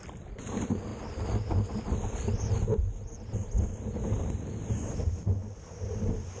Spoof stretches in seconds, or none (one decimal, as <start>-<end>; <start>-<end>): none

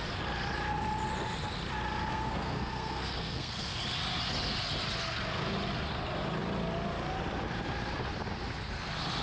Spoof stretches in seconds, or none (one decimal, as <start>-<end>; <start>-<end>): 2.1-3.8

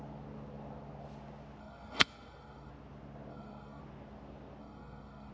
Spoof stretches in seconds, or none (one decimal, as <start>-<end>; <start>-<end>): 1.6-2.7; 3.3-3.8; 4.6-5.3

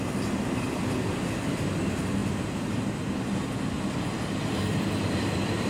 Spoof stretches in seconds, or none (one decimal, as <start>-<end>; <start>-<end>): none